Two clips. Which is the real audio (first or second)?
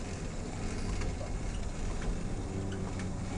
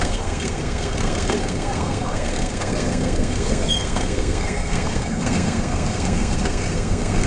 first